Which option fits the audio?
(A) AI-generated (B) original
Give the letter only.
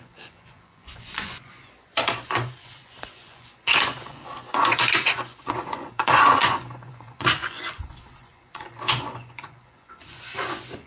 A